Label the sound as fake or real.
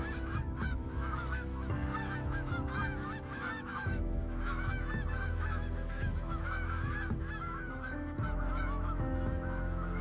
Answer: fake